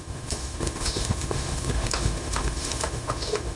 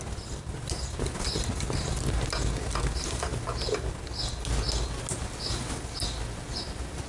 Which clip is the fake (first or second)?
first